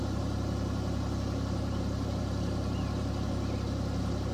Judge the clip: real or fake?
real